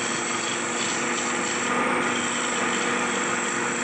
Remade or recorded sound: recorded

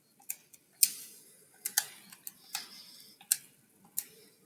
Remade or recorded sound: recorded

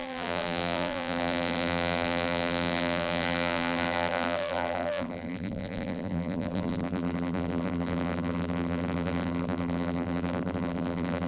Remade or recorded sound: remade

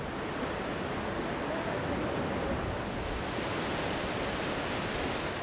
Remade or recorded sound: recorded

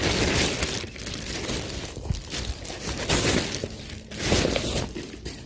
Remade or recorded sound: recorded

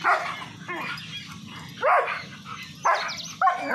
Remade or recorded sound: recorded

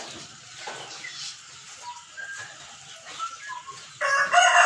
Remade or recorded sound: recorded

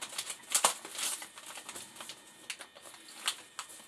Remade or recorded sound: recorded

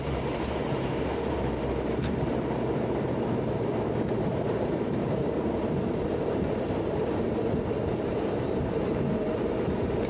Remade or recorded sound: remade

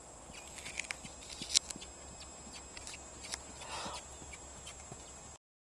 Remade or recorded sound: recorded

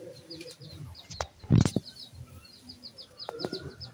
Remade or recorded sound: remade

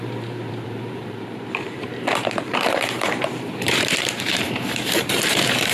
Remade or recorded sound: remade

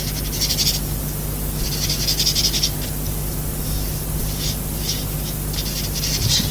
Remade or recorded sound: recorded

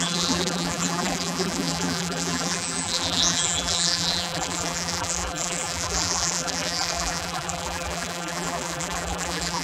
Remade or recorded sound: remade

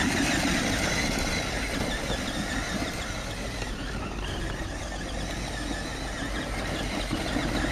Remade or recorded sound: recorded